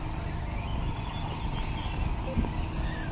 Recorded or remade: recorded